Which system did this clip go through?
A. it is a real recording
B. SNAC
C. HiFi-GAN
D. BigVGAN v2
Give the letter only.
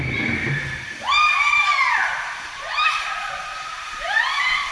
D